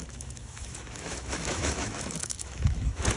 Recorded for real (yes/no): no